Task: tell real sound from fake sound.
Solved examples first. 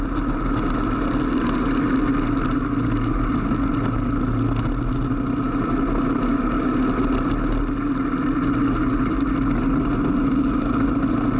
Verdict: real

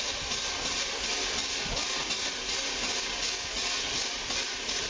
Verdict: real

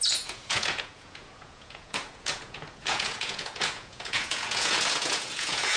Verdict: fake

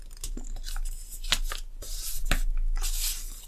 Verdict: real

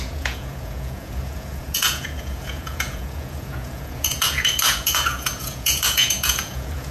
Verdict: fake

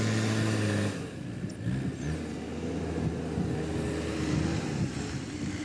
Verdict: real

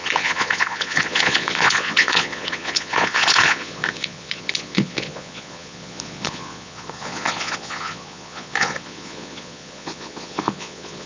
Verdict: fake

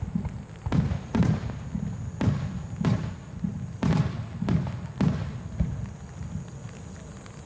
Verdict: real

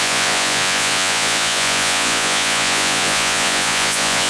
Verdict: fake